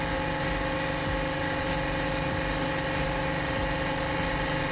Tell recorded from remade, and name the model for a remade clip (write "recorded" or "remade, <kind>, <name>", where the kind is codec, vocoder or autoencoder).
recorded